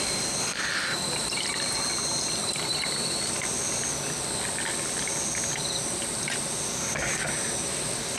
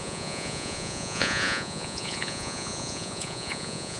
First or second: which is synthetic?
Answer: second